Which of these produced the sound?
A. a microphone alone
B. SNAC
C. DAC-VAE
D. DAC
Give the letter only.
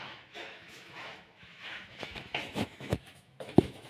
C